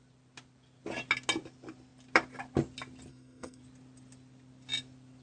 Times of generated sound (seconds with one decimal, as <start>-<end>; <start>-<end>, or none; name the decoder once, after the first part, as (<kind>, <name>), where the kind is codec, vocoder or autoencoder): 3.1-3.6 (codec, SNAC)